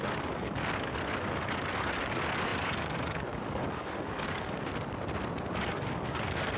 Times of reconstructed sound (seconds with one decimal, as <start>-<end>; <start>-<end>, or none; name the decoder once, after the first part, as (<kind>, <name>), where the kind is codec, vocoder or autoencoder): 0.0-4.7 (codec, DAC); 5.6-6.6